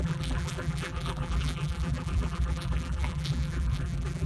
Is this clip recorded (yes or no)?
no